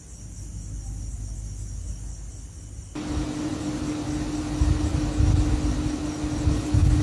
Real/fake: real